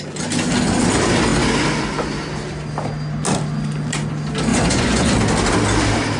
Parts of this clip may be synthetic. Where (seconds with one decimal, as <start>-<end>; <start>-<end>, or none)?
4.5-5.1